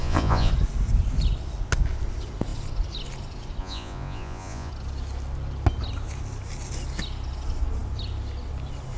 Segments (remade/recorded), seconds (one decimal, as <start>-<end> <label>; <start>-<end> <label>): 0.0-0.5 remade; 0.5-3.6 recorded; 3.6-4.7 remade; 4.7-9.0 recorded